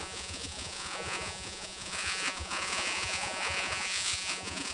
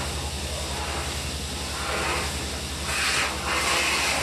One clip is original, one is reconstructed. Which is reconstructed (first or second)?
first